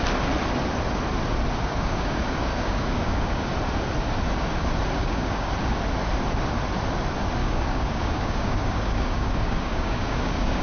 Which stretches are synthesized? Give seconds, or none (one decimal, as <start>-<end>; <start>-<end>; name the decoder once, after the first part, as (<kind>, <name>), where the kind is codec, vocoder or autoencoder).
1.6-3.5 (codec, DAC); 5.0-5.5; 7.4-10.6